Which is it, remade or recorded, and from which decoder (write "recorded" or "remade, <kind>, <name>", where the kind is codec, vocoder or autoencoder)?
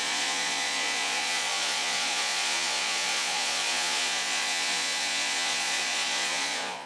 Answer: remade, vocoder, Vocos